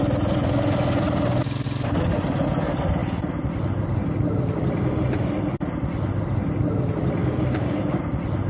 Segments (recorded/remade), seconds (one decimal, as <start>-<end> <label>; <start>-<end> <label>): 0.0-7.2 recorded; 7.2-8.1 remade; 8.1-8.5 recorded